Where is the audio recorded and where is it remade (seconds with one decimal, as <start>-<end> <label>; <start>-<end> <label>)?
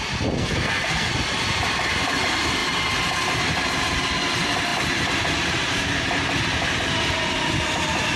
0.0-0.4 recorded; 0.4-1.1 remade; 1.1-8.2 recorded